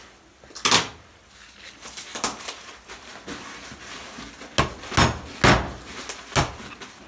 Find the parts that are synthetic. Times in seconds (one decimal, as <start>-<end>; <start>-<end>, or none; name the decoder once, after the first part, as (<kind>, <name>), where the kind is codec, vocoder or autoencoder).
none